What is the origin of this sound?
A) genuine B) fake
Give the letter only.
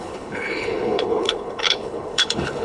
B